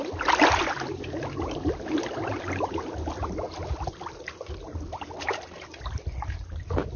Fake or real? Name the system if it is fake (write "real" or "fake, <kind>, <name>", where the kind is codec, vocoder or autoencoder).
real